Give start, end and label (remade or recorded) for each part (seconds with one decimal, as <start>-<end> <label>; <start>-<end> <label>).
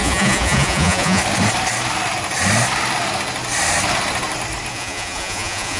0.0-1.2 remade; 1.2-4.7 recorded; 4.7-5.8 remade